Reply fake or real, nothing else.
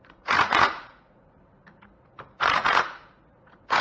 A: fake